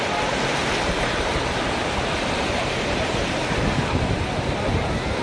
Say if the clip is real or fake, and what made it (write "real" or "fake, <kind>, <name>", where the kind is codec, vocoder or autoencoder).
real